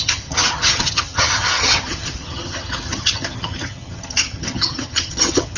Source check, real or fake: fake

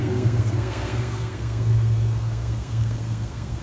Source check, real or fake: fake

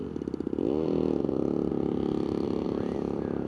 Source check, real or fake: fake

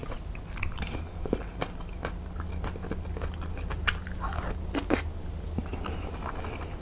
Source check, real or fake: real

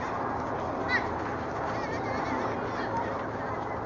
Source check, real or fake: real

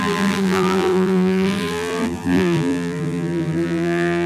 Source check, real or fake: fake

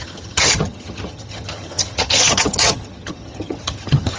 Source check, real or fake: fake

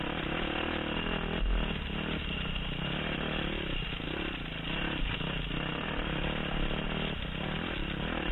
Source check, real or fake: real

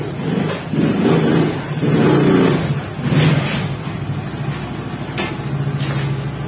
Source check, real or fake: real